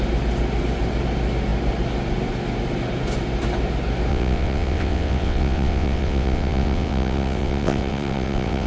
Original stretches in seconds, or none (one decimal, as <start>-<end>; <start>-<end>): 0.0-4.1